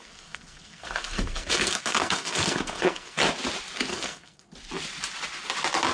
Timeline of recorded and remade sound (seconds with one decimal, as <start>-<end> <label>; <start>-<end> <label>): 0.0-3.2 remade; 3.2-3.9 recorded; 3.9-4.5 remade; 4.5-5.9 recorded